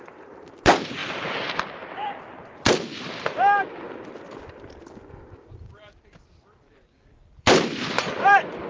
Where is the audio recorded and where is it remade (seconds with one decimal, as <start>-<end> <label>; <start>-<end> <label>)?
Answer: 0.0-1.0 remade; 1.0-5.4 recorded; 5.4-8.7 remade